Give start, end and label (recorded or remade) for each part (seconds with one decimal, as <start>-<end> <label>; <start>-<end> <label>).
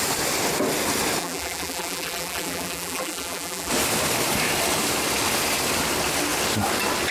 0.0-1.2 recorded; 1.2-3.7 remade; 3.7-7.1 recorded